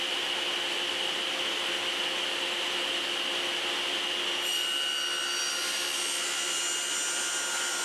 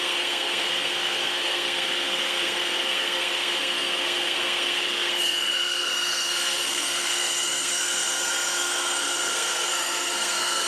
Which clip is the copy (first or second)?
second